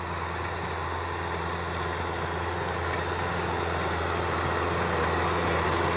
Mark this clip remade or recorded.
recorded